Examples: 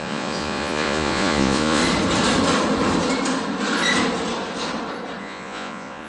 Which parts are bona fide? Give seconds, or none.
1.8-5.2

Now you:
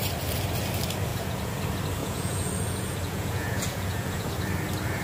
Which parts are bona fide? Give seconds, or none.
0.0-1.1; 1.6-2.0; 4.3-5.0

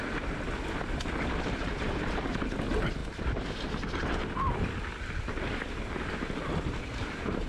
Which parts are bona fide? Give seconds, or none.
0.0-7.5

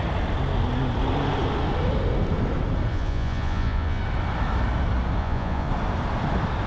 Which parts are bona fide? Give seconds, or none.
0.0-2.9; 4.0-5.2; 5.7-6.7

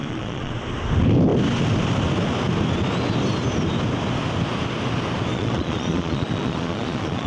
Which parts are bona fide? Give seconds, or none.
0.5-5.3

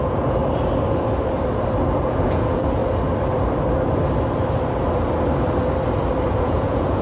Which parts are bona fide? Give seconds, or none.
0.4-2.0; 2.8-6.3